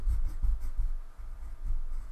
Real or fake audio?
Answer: real